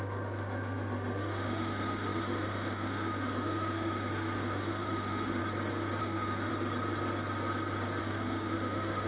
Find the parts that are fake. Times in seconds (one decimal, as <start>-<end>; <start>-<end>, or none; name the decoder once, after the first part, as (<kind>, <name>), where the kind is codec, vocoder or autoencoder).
0.0-5.4 (autoencoder, DAC-VAE); 6.0-6.5; 8.0-9.1